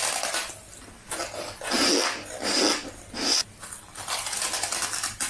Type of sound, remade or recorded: recorded